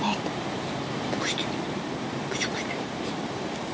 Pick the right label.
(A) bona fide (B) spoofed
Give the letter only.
B